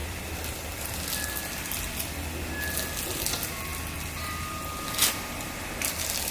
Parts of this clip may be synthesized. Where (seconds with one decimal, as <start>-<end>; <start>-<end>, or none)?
0.0-1.4

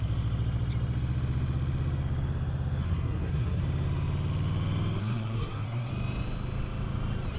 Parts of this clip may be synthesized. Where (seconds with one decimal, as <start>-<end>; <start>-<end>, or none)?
2.8-3.6; 5.0-5.9